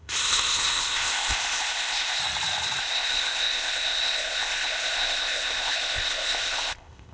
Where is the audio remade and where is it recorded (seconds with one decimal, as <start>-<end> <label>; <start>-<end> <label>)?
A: 0.0-2.2 remade; 2.2-2.8 recorded; 2.8-7.1 remade